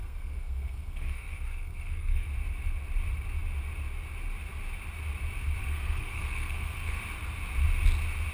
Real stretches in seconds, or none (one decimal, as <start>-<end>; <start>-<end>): 2.3-5.6; 7.0-8.3

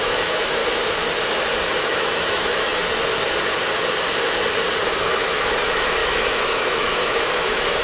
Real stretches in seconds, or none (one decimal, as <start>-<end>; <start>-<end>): 0.6-1.8; 2.8-5.0